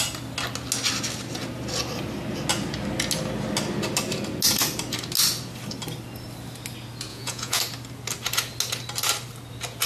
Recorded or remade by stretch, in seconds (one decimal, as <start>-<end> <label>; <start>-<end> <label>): 0.0-7.1 recorded; 7.1-7.6 remade; 7.6-9.9 recorded